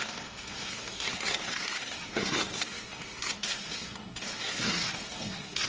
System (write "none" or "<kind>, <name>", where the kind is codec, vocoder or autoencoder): codec, SNAC